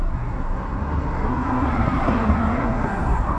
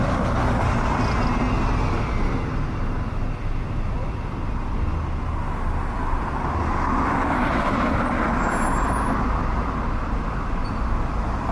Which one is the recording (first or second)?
second